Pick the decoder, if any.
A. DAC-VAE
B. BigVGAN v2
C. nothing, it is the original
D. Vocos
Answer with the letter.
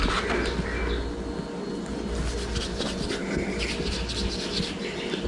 C